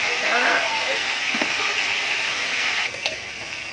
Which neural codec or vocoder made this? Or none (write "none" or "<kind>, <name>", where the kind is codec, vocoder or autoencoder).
codec, SNAC